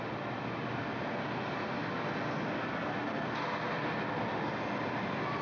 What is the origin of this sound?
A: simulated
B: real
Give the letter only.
B